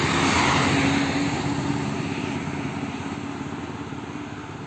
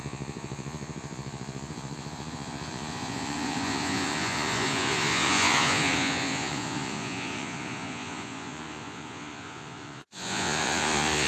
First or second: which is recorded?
first